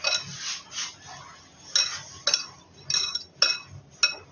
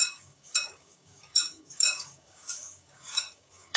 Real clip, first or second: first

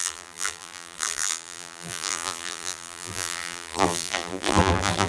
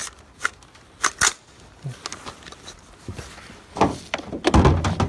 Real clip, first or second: second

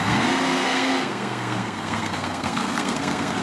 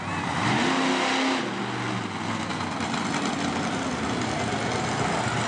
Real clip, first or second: second